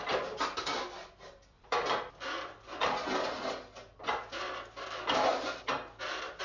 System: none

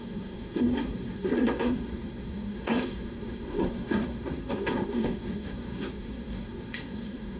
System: codec, SNAC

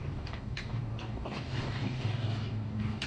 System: codec, DAC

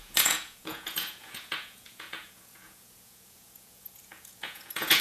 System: vocoder, Vocos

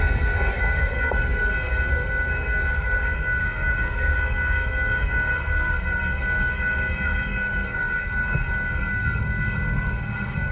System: codec, SNAC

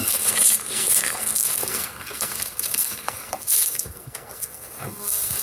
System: codec, SNAC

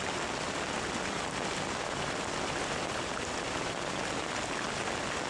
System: none